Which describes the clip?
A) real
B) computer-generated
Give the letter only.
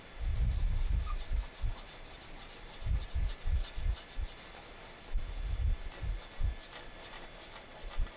A